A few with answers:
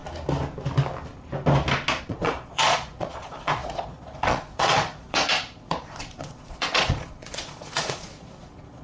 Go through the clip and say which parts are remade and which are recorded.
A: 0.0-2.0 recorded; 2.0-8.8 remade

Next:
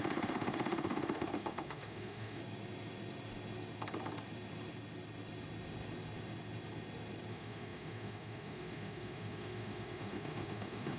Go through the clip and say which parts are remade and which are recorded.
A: 0.0-2.4 remade; 2.4-7.3 recorded; 7.3-11.0 remade

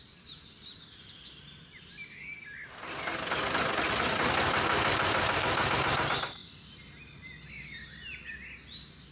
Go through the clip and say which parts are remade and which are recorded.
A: 0.0-9.1 recorded

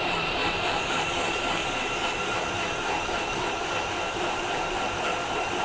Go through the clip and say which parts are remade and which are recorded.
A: 0.0-5.6 remade

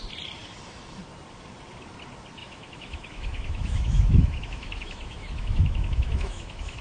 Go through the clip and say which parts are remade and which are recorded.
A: 0.0-2.4 recorded; 2.4-6.8 remade